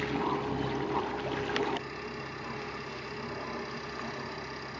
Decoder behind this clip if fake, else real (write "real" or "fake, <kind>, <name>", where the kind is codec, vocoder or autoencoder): real